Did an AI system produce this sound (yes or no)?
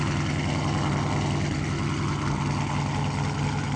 no